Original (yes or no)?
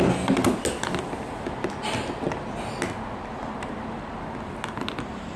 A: yes